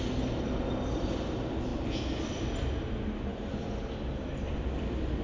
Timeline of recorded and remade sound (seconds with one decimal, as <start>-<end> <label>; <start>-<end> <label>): 0.0-3.3 recorded; 3.3-3.8 remade; 3.8-5.2 recorded